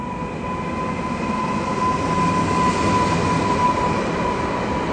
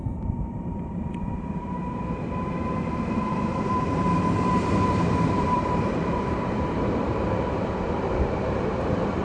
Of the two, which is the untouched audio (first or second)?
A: first